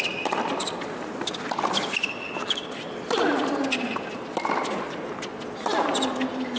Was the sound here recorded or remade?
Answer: recorded